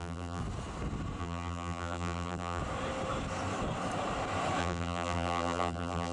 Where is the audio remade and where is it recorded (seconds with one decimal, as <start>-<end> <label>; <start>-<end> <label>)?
0.0-0.4 remade; 0.4-1.2 recorded; 1.2-2.6 remade; 2.6-4.6 recorded; 4.6-6.1 remade